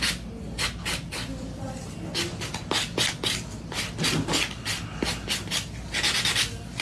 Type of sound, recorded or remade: recorded